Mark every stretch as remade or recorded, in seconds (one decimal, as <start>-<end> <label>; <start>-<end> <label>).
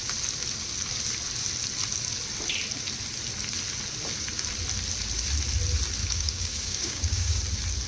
0.0-6.0 recorded; 6.0-7.4 remade; 7.4-7.9 recorded